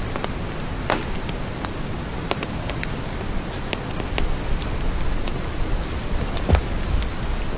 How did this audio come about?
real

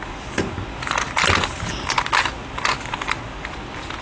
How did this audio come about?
real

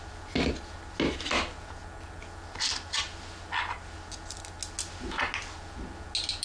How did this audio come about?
real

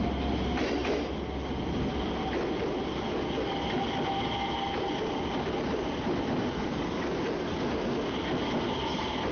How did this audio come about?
real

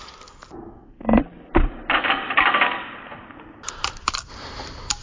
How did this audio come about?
real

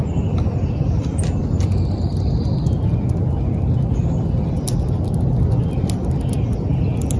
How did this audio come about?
real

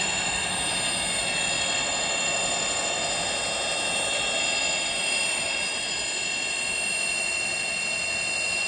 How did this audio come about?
real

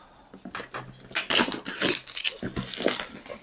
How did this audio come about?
real